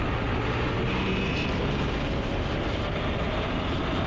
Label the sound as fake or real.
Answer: real